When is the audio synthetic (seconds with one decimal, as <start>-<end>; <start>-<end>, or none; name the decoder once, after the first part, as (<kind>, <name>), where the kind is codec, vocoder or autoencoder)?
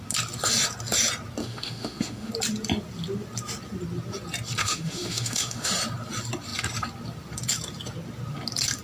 1.4-2.3 (autoencoder, DAC-VAE); 4.6-5.7